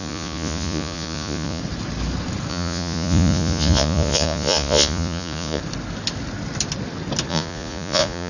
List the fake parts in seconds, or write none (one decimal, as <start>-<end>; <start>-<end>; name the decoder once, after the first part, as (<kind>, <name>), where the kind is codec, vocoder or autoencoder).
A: 0.0-1.6 (vocoder, Vocos); 2.5-5.6; 7.3-8.3